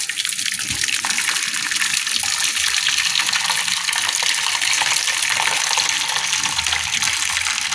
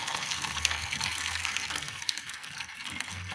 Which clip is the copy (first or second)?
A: second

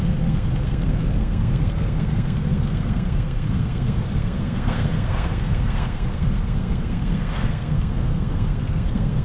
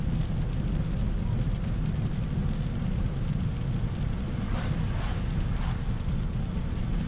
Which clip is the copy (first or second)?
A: first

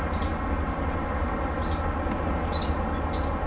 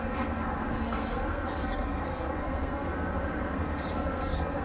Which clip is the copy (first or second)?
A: second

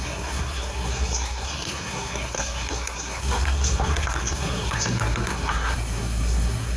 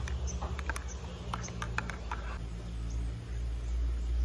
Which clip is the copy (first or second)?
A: first